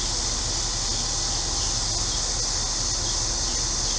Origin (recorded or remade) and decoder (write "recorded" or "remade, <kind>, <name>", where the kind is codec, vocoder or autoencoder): recorded